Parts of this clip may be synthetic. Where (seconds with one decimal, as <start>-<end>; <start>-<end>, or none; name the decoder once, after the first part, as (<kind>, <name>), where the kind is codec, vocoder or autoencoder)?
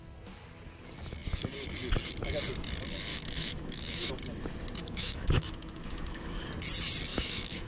3.1-4.1 (autoencoder, DAC-VAE); 4.8-6.4; 7.1-7.7